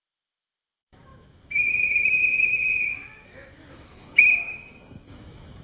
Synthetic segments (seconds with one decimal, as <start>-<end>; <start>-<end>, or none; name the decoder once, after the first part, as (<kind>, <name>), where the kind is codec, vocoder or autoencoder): 0.0-5.6 (autoencoder, DAC-VAE)